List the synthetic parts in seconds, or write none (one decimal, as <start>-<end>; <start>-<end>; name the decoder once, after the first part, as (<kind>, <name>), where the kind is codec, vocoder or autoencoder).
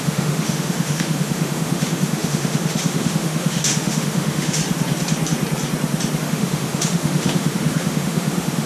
0.0-4.6 (autoencoder, DAC-VAE); 6.2-8.7